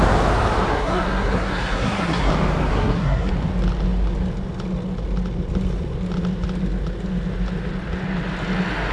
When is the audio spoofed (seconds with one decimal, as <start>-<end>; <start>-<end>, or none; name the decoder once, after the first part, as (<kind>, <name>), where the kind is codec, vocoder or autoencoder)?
0.7-2.3 (codec, SNAC); 2.7-3.3